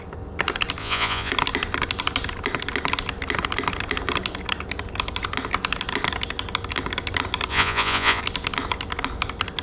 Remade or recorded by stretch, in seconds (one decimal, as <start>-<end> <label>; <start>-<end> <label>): 0.0-0.8 recorded; 0.8-1.3 remade; 1.3-7.5 recorded; 7.5-8.2 remade; 8.2-9.6 recorded